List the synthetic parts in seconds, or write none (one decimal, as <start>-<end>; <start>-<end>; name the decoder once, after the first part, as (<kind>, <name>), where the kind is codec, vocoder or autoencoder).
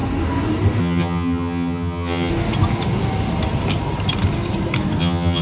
0.8-2.3 (vocoder, HiFi-GAN); 5.0-5.4